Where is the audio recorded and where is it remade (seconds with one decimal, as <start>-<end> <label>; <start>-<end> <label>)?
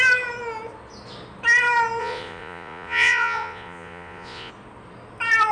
0.0-2.0 recorded; 2.0-4.5 remade; 4.5-5.5 recorded